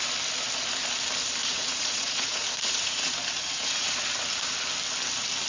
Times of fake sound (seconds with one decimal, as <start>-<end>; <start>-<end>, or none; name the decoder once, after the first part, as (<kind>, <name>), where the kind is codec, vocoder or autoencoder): 1.4-4.0 (vocoder, Vocos)